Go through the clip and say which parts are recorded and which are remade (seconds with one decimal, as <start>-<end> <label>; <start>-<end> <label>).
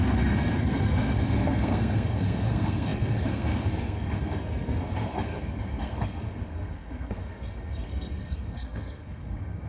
0.0-9.7 remade